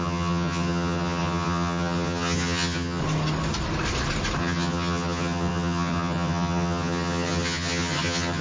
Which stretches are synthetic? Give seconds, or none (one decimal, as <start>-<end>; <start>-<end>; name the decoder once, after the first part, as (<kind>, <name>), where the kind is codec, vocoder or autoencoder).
0.0-3.0 (vocoder, HiFi-GAN); 4.4-8.4